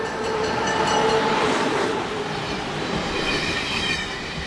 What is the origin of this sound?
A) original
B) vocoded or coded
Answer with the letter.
B